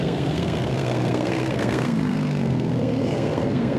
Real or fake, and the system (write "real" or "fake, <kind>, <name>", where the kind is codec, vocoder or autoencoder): fake, codec, SNAC